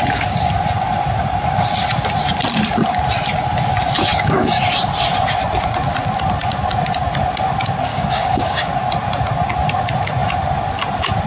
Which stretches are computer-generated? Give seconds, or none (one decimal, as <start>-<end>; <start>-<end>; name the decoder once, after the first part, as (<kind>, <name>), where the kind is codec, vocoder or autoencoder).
4.1-4.6 (codec, DAC); 7.9-8.7